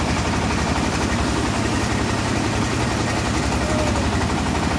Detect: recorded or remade recorded